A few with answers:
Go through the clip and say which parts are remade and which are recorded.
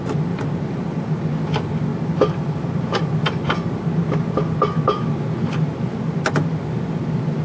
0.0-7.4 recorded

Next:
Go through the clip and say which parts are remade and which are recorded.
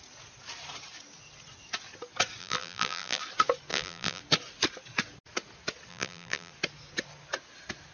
0.0-2.4 recorded; 2.4-3.2 remade; 3.2-3.7 recorded; 3.7-4.2 remade; 4.2-5.9 recorded; 5.9-6.5 remade; 6.5-7.9 recorded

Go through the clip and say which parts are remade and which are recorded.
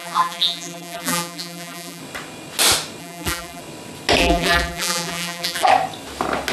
0.0-2.0 remade; 2.0-3.0 recorded; 3.0-3.6 remade; 3.6-4.2 recorded; 4.2-5.7 remade; 5.7-6.5 recorded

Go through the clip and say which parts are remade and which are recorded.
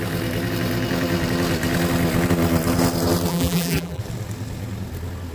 0.0-3.3 recorded; 3.3-4.0 remade; 4.0-5.3 recorded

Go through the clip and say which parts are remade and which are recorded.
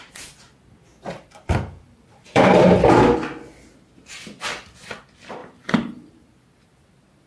0.0-0.9 recorded; 0.9-2.9 remade; 2.9-5.4 recorded; 5.4-6.1 remade; 6.1-7.3 recorded